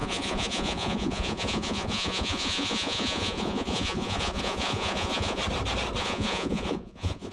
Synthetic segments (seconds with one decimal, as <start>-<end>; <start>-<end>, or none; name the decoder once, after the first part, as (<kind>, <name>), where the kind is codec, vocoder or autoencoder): 0.0-5.4 (vocoder, Vocos); 6.0-7.3